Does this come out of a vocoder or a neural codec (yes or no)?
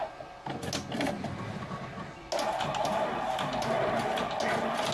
no